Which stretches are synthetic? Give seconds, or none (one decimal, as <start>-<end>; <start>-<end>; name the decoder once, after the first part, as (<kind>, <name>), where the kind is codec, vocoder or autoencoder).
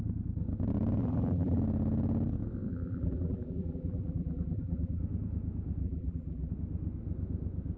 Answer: 1.0-1.6 (vocoder, BigVGAN v2); 2.7-5.0; 5.8-6.5